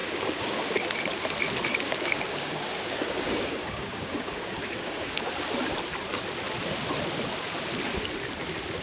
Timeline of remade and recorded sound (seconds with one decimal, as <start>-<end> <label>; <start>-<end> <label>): 0.0-0.8 remade; 0.8-1.7 recorded; 1.7-5.3 remade; 5.3-8.8 recorded